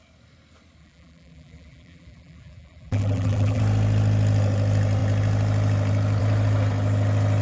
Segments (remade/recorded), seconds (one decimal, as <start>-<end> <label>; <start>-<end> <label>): 0.0-0.8 recorded; 0.8-3.6 remade; 3.6-7.4 recorded